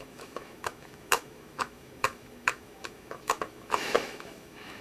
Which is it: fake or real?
fake